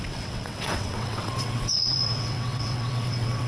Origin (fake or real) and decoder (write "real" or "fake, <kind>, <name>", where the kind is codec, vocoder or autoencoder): fake, vocoder, WaveNeXt